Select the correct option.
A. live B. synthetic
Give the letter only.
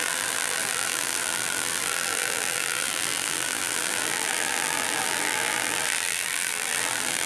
B